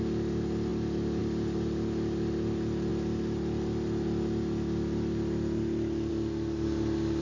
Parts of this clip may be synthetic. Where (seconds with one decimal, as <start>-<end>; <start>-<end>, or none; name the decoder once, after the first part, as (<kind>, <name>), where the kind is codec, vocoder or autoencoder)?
none